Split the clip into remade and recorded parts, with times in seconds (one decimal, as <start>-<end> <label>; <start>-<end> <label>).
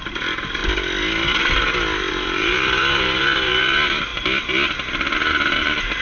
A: 0.0-0.6 remade; 0.6-2.1 recorded; 2.1-4.1 remade; 4.1-5.5 recorded; 5.5-6.0 remade